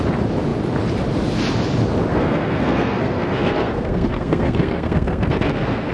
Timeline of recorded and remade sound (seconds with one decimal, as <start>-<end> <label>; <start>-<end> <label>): 0.0-2.1 recorded; 2.1-5.9 remade